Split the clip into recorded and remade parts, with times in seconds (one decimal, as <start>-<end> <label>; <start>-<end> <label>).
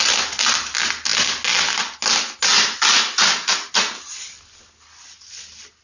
0.0-5.8 recorded